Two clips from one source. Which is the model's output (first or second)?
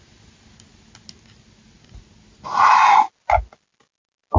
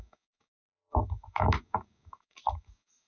second